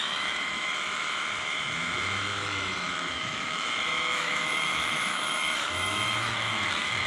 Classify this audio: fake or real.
fake